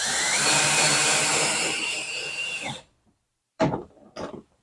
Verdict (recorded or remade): remade